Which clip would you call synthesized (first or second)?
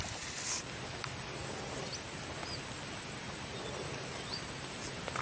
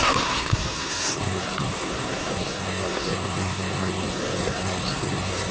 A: second